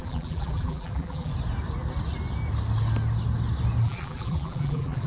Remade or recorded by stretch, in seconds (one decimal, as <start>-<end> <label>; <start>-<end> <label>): 0.0-1.3 remade; 1.3-3.8 recorded; 3.8-5.1 remade